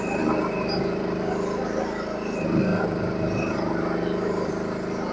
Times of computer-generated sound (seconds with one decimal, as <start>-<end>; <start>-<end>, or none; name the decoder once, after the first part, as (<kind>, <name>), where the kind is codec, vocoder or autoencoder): 0.0-5.1 (vocoder, BigVGAN v2)